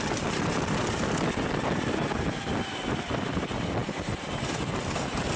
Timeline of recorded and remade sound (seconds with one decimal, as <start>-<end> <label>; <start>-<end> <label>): 0.0-3.8 recorded; 3.8-4.9 remade; 4.9-5.4 recorded